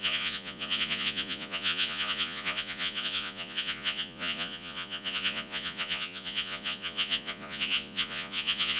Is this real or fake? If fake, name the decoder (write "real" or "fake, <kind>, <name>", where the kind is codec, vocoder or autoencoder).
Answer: fake, vocoder, Vocos